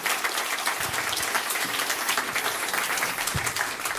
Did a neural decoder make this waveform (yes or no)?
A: yes